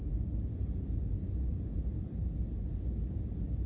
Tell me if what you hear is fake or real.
real